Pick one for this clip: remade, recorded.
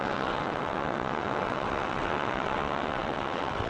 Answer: remade